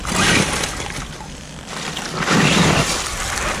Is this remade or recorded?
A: recorded